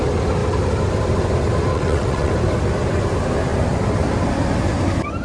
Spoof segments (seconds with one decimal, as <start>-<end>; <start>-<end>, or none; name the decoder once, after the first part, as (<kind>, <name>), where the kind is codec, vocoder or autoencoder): 1.7-2.3 (vocoder, WaveNeXt)